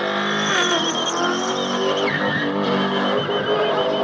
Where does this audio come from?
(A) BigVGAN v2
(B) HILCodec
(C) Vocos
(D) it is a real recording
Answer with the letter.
D